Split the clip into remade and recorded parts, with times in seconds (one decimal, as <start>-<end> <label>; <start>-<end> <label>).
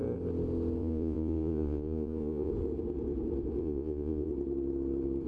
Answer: 0.0-0.8 recorded; 0.8-2.5 remade; 2.5-3.6 recorded; 3.6-4.3 remade; 4.3-5.3 recorded